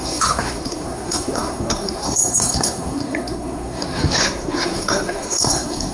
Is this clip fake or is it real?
fake